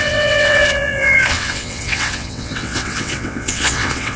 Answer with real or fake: fake